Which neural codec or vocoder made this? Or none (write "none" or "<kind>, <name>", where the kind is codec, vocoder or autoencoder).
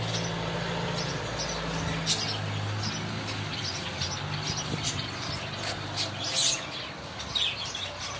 none